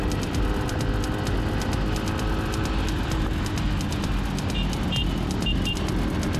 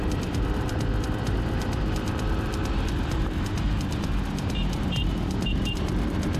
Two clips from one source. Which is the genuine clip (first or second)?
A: first